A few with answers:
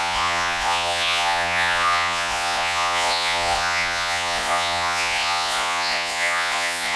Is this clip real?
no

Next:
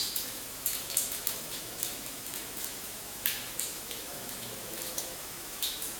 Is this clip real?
no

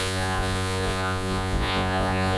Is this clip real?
no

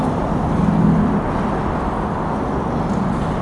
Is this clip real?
yes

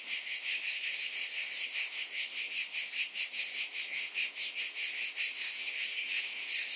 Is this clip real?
no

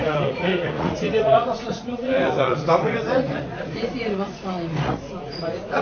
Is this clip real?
no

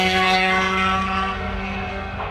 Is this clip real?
no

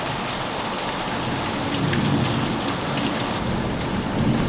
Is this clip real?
yes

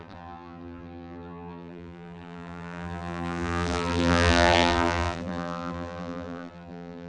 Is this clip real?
no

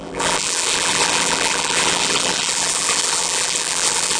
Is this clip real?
no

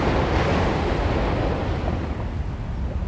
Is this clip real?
yes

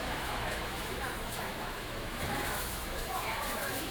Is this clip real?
no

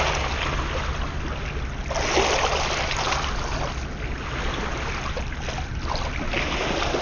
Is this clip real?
yes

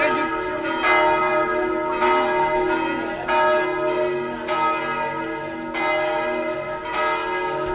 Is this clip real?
yes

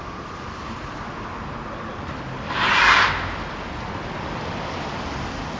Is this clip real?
yes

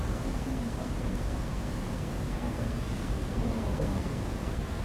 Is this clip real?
no